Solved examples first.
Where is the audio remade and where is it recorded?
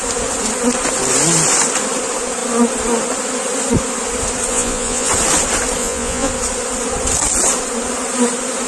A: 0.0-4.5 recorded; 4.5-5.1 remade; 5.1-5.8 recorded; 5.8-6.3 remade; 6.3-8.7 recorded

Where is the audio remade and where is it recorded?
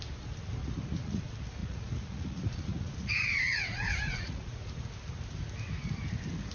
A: 0.0-0.6 recorded; 0.6-1.2 remade; 1.2-1.6 recorded; 1.6-4.7 remade; 4.7-6.5 recorded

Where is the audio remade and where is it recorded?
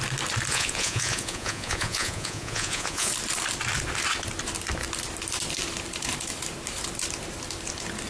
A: 0.0-0.5 recorded; 0.5-3.1 remade; 3.1-8.1 recorded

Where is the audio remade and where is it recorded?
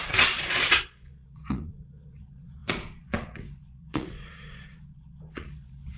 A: 0.0-6.0 remade